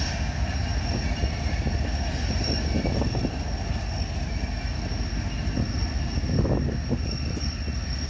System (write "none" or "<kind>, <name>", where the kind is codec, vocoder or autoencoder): none